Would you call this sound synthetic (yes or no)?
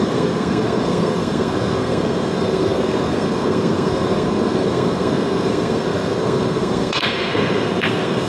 yes